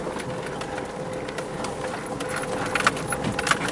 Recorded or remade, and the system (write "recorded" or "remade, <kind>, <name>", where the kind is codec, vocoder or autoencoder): recorded